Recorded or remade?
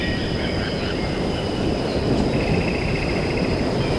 remade